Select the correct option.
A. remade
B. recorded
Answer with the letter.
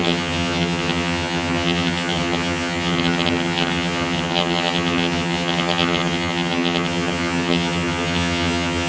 A